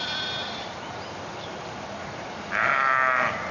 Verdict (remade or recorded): recorded